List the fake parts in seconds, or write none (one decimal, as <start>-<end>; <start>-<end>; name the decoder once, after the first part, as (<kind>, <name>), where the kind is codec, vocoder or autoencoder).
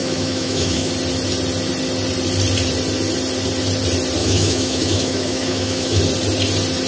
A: 0.0-0.9 (autoencoder, DAC-VAE); 4.2-6.0